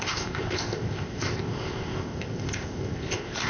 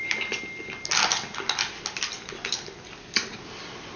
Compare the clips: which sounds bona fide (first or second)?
second